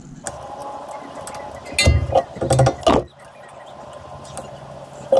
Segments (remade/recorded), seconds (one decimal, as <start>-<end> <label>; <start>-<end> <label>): 0.0-5.2 recorded